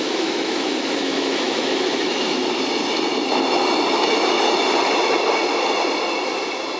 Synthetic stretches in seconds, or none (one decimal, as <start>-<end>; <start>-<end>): 0.0-2.4